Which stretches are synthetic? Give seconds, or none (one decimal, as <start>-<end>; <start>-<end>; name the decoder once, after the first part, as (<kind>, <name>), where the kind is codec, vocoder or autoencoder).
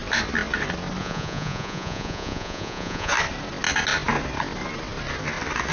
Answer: 1.0-3.1 (vocoder, Vocos)